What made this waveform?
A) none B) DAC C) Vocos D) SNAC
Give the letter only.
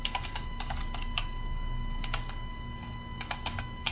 B